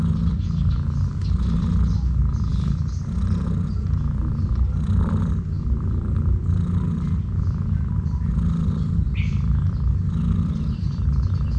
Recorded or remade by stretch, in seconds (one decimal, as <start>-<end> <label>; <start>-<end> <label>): 0.0-11.6 recorded

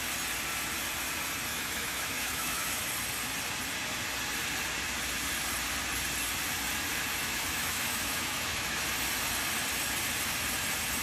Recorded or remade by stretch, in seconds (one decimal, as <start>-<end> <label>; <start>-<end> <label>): 0.0-1.5 recorded; 1.5-2.9 remade; 2.9-7.2 recorded; 7.2-8.8 remade; 8.8-11.0 recorded